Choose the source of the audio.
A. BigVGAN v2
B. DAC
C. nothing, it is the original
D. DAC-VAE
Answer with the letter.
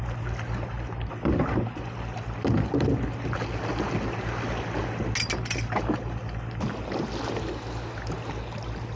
C